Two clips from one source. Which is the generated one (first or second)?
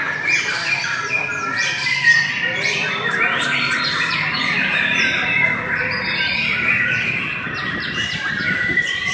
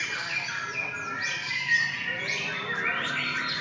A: first